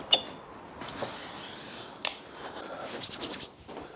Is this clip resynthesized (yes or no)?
no